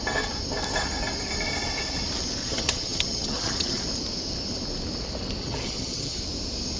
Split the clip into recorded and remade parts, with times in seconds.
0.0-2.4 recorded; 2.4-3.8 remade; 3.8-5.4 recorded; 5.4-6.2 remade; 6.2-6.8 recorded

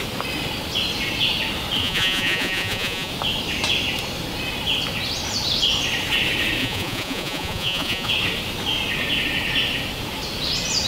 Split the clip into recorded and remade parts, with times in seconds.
0.0-1.8 recorded; 1.8-3.1 remade; 3.1-6.6 recorded; 6.6-8.1 remade; 8.1-10.9 recorded

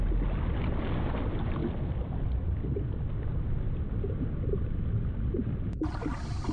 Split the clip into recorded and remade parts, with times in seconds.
0.0-6.5 recorded

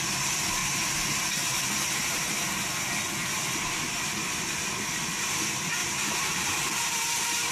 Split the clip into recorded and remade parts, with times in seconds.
0.0-0.6 recorded; 0.6-2.2 remade; 2.2-5.8 recorded; 5.8-7.5 remade